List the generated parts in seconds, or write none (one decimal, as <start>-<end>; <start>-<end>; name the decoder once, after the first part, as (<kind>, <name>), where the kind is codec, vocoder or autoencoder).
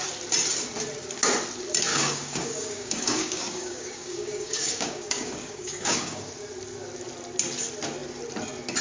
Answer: 1.9-6.3 (codec, DAC)